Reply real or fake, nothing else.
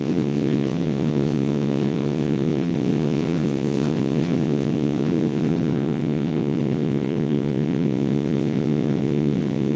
fake